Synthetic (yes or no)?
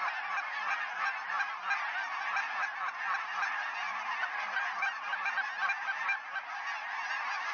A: no